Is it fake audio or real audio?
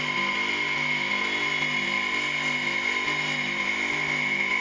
real